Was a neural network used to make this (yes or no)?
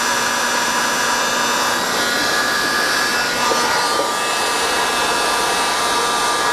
no